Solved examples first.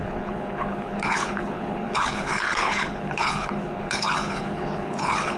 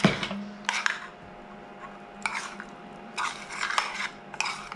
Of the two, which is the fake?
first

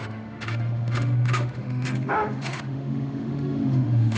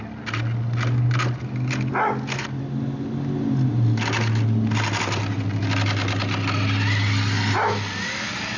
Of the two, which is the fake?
first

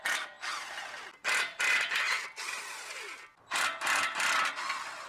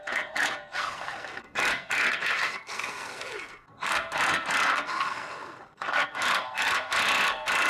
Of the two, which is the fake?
second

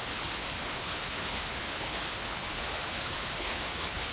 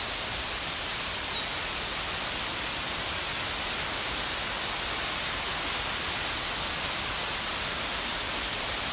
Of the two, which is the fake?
first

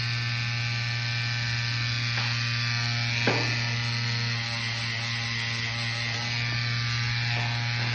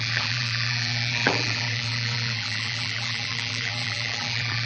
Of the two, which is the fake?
second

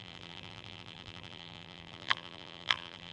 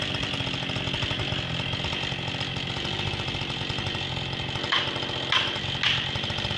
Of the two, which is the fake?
first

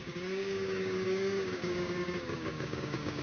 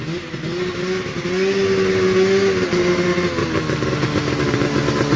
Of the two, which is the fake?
first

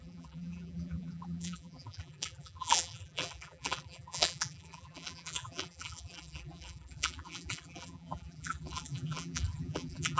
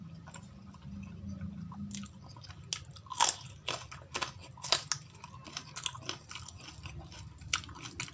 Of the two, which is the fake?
first